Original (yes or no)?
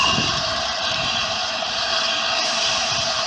no